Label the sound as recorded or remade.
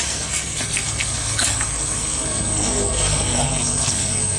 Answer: remade